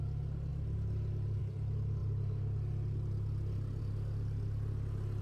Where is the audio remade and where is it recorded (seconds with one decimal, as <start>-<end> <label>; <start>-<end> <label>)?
0.0-5.2 recorded